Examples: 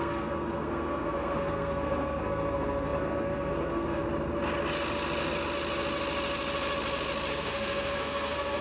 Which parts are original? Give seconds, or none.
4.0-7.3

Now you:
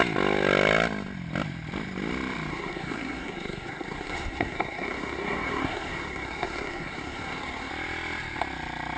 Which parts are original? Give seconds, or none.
0.0-2.5; 7.7-9.0

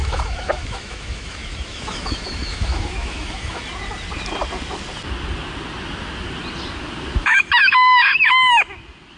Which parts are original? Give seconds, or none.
3.6-7.2; 8.5-9.2

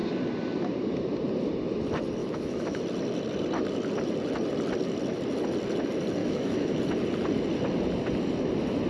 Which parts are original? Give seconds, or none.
0.0-2.2; 2.8-6.2; 6.8-8.9

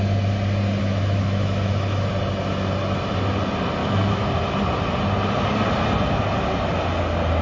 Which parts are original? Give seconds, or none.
0.0-0.8; 2.1-3.8; 4.3-7.4

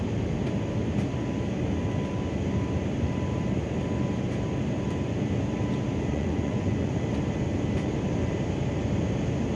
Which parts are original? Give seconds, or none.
0.0-6.1; 6.9-9.6

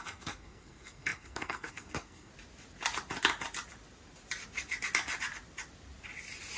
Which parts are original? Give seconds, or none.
2.3-6.6